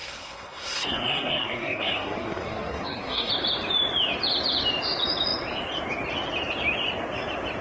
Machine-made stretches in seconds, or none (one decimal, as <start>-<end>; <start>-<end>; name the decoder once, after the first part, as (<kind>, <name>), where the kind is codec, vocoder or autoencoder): 0.0-3.3 (codec, SNAC)